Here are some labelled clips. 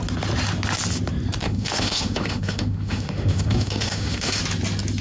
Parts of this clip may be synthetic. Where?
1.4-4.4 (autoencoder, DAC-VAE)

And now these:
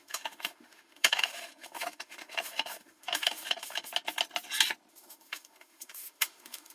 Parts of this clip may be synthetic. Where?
0.0-3.9 (autoencoder, DAC-VAE); 4.9-6.7

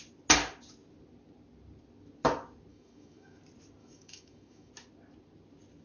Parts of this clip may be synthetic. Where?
2.7-3.4 (autoencoder, DAC-VAE); 3.8-4.7

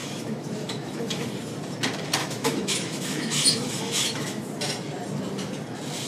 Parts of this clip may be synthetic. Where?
0.0-1.3 (autoencoder, DAC-VAE); 2.2-4.6

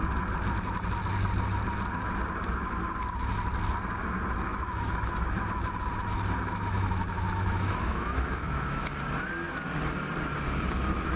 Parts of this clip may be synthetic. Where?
4.5-9.0 (autoencoder, DAC-VAE)